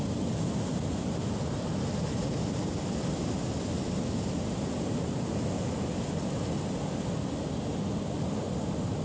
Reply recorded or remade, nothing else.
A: recorded